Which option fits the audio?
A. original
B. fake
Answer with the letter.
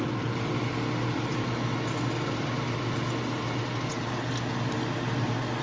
A